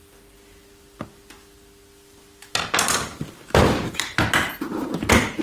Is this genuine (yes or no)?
yes